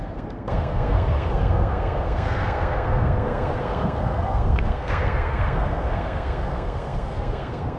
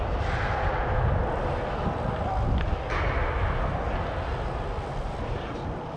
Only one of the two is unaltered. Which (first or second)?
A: second